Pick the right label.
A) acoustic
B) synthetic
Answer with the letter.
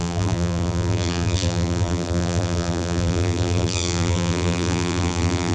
B